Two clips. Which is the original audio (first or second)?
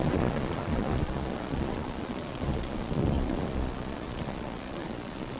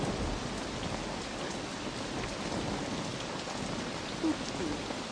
second